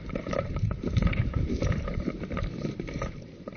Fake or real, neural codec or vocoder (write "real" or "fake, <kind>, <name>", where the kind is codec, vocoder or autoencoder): fake, vocoder, BigVGAN v2